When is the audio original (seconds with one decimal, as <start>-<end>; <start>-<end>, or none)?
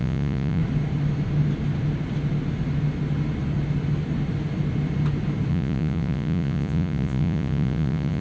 0.6-5.5